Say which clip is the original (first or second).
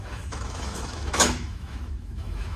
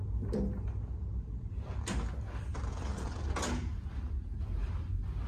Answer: second